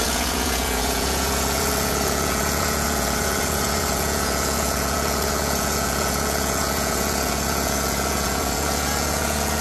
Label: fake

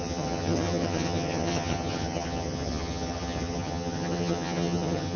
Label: fake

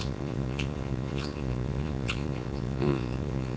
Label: fake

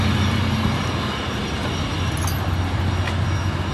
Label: real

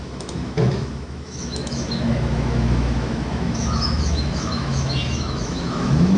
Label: fake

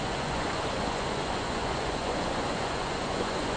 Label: fake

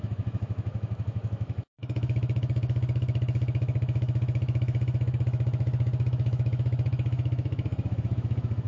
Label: fake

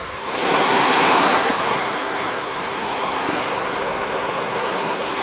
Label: fake